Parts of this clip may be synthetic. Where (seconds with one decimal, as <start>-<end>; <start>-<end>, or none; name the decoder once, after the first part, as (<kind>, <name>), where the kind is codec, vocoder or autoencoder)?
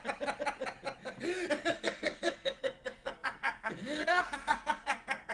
1.7-5.3 (codec, SNAC)